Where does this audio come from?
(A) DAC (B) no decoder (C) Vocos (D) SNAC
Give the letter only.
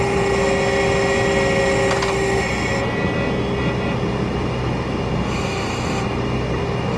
B